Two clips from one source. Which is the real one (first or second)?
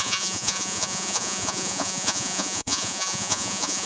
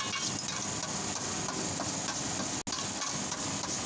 second